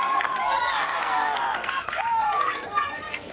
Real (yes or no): no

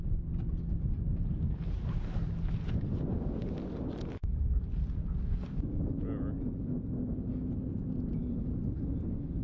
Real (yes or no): yes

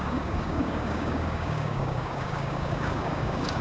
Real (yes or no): no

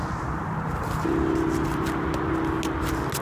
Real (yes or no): yes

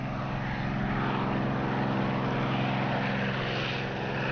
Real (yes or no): yes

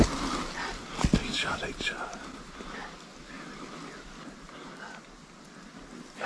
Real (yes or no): yes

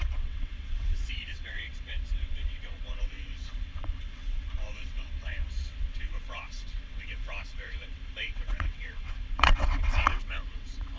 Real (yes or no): no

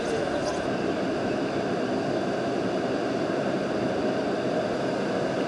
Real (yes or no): yes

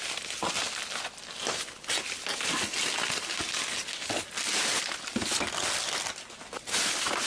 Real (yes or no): yes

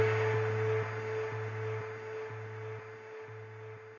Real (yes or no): yes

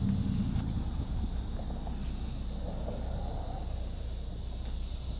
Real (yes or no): yes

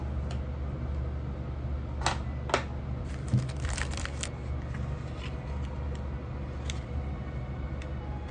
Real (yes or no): yes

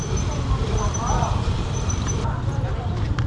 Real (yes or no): no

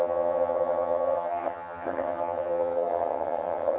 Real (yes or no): no